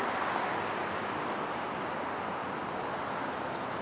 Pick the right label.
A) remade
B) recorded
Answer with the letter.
B